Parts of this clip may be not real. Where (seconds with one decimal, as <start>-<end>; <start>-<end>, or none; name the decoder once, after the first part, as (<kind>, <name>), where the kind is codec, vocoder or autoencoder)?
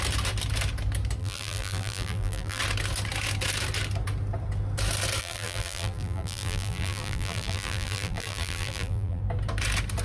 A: 1.2-2.6 (vocoder, BigVGAN v2); 5.2-9.2